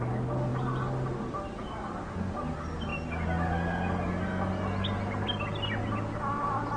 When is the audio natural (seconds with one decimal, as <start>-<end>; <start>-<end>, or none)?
0.0-6.8